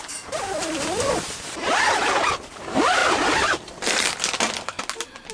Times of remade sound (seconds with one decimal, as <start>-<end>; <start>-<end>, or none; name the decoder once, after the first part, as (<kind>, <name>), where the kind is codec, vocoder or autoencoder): 3.0-4.2 (vocoder, BigVGAN v2)